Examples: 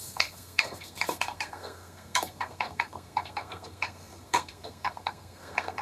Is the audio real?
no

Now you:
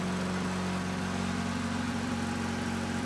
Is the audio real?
yes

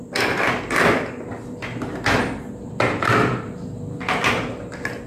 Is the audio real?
yes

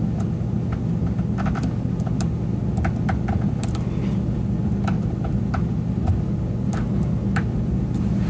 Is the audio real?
yes